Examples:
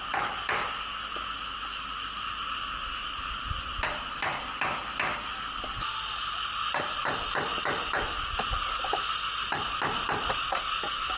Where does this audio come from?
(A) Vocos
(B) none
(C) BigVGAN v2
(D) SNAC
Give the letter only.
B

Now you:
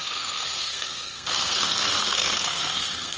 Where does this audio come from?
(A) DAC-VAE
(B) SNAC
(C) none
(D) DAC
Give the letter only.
B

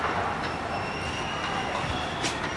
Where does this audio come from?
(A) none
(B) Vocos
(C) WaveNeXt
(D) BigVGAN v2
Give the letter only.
A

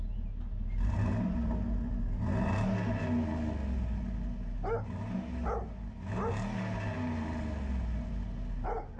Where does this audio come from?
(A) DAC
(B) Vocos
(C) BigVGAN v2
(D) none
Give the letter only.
D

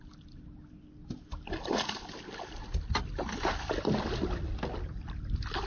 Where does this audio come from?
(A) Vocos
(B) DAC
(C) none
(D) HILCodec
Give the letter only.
C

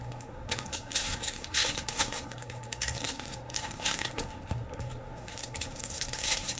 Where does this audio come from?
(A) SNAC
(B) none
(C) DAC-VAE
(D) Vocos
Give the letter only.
A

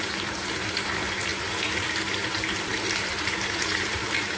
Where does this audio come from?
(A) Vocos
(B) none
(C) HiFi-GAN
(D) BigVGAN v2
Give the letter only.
D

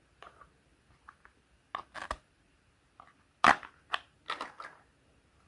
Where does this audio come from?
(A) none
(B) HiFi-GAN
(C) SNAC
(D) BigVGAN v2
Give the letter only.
A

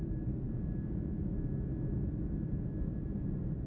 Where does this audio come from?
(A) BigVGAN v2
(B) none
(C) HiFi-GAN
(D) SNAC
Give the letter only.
B